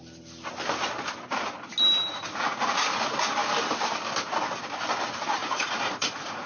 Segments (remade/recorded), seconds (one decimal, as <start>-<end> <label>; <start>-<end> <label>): 0.0-2.1 recorded; 2.1-2.8 remade; 2.8-5.4 recorded; 5.4-6.5 remade